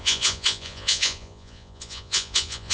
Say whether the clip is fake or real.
fake